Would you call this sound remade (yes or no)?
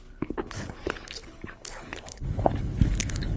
yes